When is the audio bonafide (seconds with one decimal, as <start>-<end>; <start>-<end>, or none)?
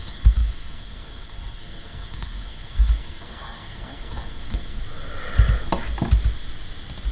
4.8-7.1